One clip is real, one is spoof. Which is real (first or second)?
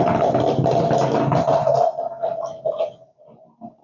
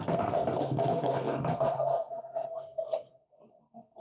first